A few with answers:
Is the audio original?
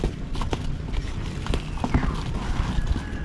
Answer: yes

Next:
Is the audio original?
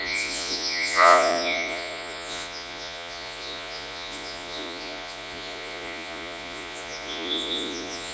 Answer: no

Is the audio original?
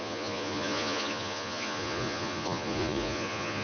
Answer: no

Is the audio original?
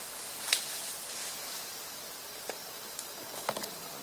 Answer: yes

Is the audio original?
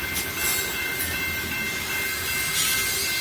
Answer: yes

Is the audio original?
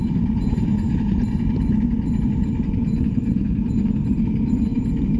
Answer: yes